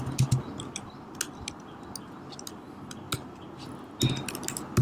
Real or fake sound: real